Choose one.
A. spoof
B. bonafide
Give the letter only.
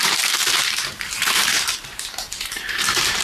A